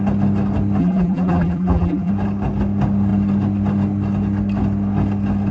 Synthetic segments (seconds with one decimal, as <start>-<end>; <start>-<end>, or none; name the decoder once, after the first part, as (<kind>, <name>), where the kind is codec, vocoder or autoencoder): 0.8-2.1 (vocoder, BigVGAN v2)